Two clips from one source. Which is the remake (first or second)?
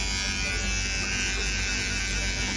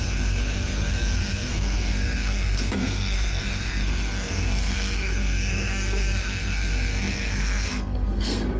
second